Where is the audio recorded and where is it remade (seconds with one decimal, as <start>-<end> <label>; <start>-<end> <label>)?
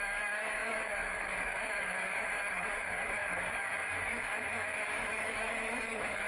0.0-6.3 remade